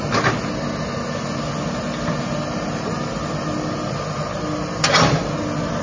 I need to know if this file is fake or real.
real